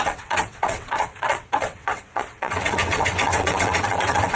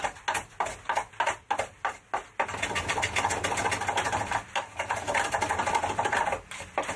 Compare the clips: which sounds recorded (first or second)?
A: second